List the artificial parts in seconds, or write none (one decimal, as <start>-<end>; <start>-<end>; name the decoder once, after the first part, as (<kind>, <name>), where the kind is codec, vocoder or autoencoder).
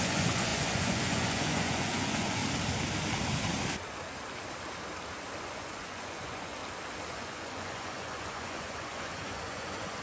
0.0-2.4 (vocoder, Vocos); 5.4-6.6; 7.1-10.0